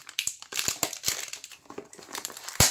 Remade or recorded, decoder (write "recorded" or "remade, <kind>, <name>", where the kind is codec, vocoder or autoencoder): remade, vocoder, BigVGAN v2